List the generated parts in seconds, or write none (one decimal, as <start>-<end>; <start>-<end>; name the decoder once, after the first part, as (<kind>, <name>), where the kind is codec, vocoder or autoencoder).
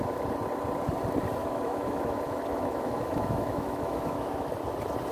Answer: 1.4-4.5 (autoencoder, DAC-VAE)